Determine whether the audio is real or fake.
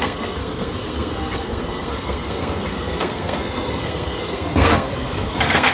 fake